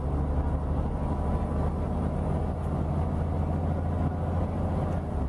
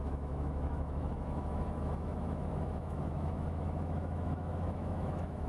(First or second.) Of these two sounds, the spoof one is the second